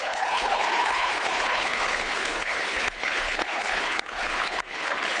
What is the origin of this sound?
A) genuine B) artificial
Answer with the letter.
B